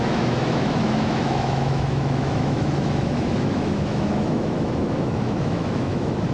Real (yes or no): no